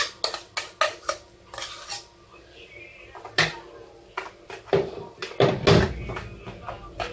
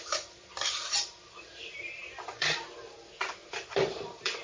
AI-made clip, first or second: second